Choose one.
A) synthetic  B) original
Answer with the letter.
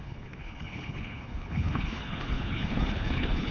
A